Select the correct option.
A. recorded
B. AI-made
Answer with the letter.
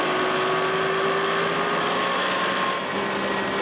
A